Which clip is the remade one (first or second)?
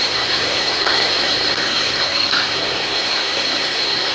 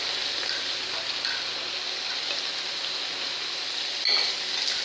first